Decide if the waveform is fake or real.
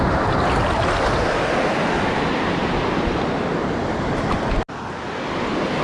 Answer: real